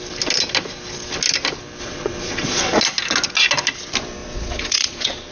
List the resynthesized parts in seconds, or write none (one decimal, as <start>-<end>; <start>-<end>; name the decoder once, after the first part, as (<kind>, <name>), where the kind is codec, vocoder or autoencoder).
1.8-2.8 (vocoder, Vocos); 4.2-5.3